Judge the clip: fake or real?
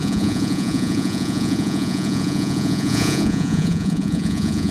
fake